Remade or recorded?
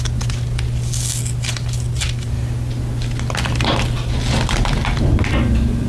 recorded